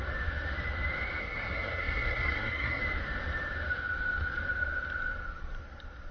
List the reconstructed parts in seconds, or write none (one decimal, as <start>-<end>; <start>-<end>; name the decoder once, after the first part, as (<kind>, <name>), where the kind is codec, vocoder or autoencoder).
1.2-2.8 (codec, SNAC)